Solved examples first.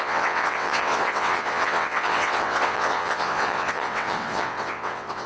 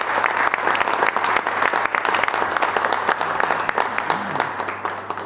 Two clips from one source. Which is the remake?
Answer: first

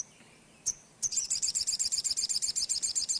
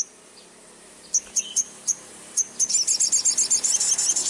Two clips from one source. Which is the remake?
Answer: first